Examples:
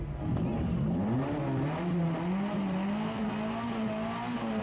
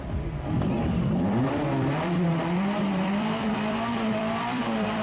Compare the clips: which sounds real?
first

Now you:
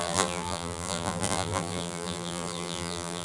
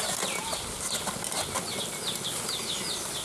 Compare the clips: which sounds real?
second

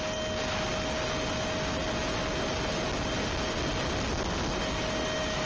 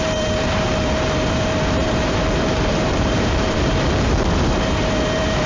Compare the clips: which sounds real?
first